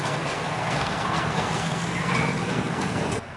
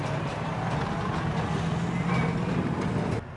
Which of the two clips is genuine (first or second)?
second